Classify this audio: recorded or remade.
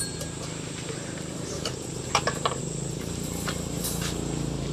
remade